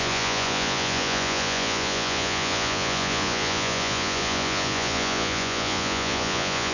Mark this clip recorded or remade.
remade